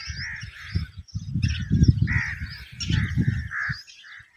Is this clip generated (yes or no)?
no